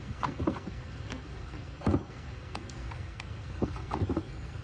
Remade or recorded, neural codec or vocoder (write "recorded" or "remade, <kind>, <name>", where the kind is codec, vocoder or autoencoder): remade, codec, SNAC